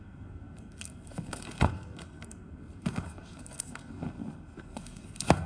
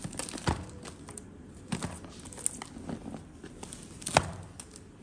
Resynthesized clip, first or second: first